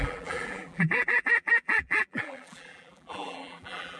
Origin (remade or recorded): remade